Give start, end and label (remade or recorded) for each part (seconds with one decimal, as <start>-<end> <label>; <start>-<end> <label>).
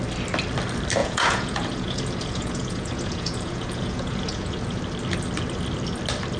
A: 0.0-1.0 recorded; 1.0-4.8 remade; 4.8-6.4 recorded